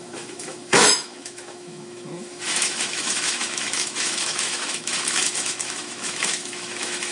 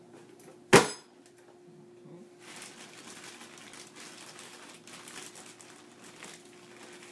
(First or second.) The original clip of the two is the second